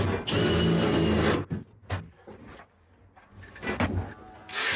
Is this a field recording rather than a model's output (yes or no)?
yes